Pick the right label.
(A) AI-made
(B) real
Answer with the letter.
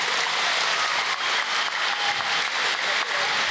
B